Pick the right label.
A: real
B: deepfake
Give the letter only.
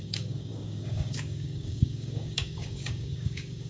B